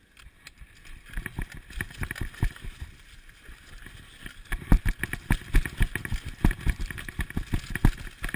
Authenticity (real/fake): real